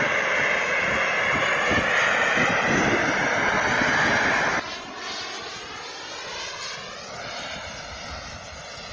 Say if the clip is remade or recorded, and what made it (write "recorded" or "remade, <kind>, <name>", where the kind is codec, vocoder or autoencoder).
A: recorded